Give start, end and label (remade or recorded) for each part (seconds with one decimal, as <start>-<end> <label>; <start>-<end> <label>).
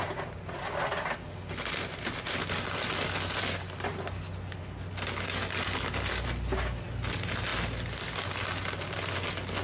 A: 0.0-9.6 recorded